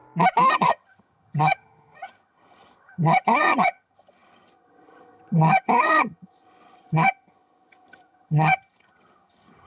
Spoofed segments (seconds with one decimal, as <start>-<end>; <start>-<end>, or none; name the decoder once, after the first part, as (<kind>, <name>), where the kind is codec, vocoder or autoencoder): 0.5-9.7 (vocoder, HiFi-GAN)